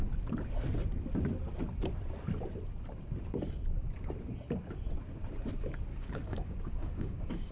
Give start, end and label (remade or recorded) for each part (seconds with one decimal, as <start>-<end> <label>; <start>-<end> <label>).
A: 0.0-5.9 recorded; 5.9-7.5 remade